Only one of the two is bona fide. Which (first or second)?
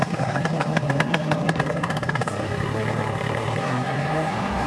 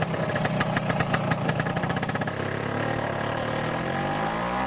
second